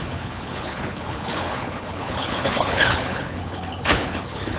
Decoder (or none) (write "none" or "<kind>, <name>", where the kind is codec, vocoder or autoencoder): codec, HILCodec